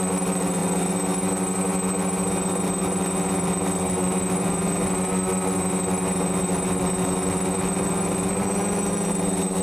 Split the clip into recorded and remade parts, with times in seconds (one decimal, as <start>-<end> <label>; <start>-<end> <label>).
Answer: 0.0-9.6 recorded